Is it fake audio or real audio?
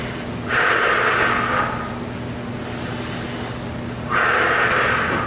real